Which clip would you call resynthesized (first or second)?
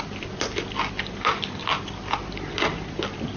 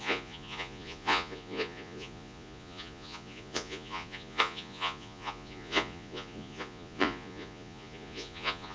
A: second